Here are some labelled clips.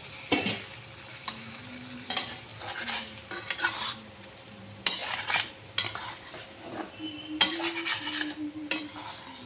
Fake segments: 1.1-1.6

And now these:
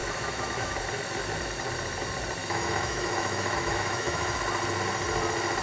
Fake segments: 0.0-0.8; 2.4-4.4

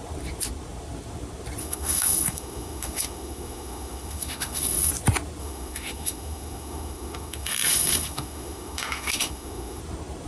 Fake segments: 1.6-4.9; 5.4-9.8

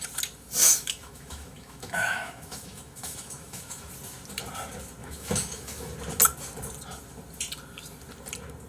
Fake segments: 0.6-3.9; 5.0-5.9

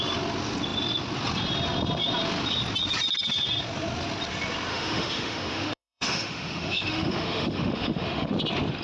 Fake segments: 4.7-8.3

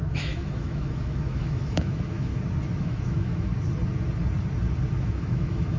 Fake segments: 0.0-2.3; 2.8-3.5; 5.0-5.8

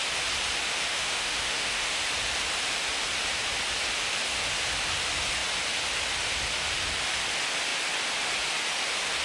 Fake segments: 0.9-2.0

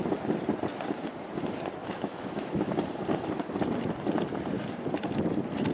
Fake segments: 1.8-2.7